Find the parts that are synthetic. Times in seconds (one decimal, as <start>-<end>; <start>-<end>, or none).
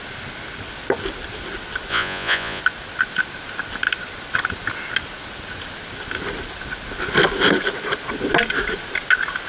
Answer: 1.9-2.6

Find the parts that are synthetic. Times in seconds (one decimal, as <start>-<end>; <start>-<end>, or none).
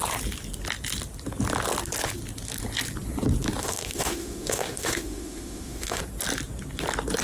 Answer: 3.6-6.0